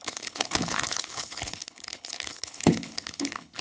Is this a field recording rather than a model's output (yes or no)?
no